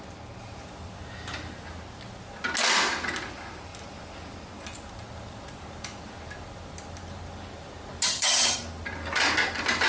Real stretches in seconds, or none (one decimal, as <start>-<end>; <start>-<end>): 0.0-8.1; 8.6-9.9